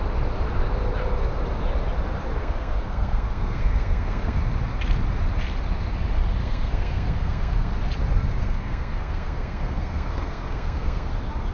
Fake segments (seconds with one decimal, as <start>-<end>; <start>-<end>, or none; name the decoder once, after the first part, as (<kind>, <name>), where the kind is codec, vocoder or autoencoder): 2.4-4.4 (codec, SNAC); 6.4-7.7; 8.4-11.1